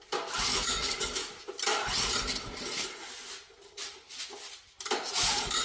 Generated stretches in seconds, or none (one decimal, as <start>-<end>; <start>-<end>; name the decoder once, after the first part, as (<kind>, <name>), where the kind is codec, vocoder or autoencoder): 0.5-1.4 (autoencoder, DAC-VAE)